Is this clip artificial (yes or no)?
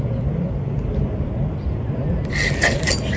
no